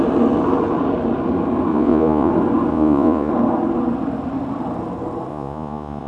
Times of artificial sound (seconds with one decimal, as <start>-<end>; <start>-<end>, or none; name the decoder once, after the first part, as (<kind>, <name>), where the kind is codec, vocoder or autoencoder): 1.7-2.3 (vocoder, Vocos); 2.7-3.3; 5.3-6.1